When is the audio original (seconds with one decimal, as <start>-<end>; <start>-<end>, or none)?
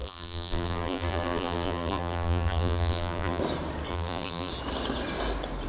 3.4-3.9; 4.5-5.7